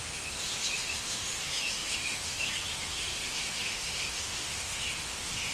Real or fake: fake